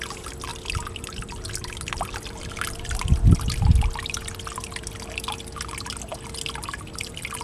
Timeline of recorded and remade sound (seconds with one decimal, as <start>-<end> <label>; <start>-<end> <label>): 0.0-0.5 recorded; 0.5-4.9 remade; 4.9-7.4 recorded